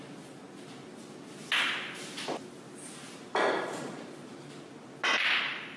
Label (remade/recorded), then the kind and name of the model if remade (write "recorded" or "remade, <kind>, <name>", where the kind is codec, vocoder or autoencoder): recorded